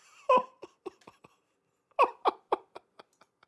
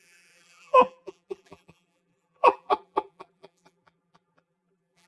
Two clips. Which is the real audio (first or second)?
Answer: first